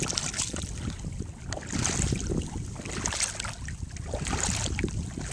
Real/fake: real